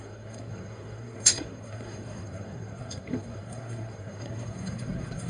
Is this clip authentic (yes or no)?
no